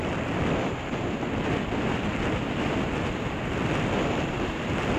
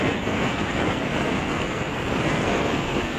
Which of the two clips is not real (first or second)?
second